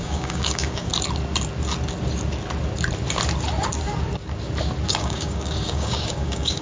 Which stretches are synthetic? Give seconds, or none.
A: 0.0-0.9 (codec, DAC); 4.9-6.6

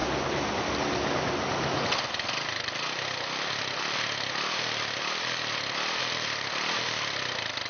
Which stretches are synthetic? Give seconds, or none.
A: none

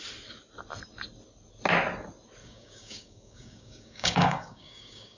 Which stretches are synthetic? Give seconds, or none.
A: 2.4-5.2 (codec, DAC)

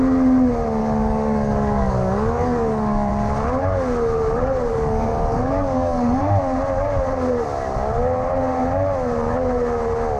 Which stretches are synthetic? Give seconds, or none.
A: 0.8-3.1 (codec, DAC); 4.7-6.2

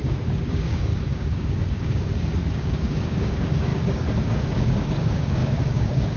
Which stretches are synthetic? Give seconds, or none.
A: 0.0-6.2 (codec, DAC)